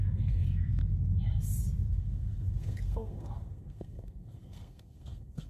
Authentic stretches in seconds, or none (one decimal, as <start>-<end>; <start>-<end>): 0.8-1.9